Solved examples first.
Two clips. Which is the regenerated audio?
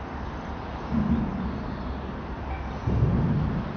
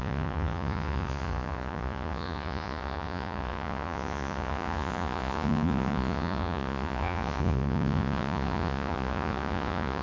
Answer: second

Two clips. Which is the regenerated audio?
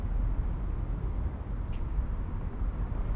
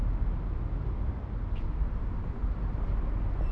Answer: first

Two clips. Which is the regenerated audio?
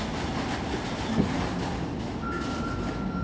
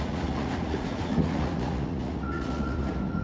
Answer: second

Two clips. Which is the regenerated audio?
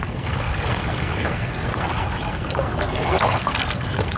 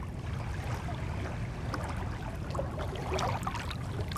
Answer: first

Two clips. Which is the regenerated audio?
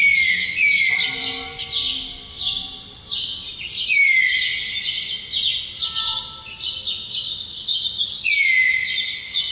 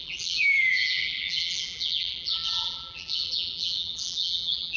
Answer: second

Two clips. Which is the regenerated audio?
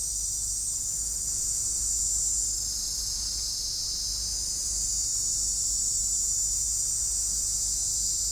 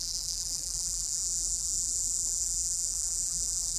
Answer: second